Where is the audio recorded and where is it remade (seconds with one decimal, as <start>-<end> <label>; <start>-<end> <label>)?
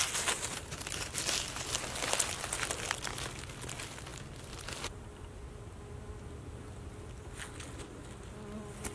0.0-8.9 recorded